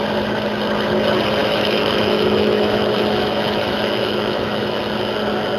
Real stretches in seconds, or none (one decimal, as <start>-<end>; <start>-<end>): 0.0-1.4; 4.8-5.6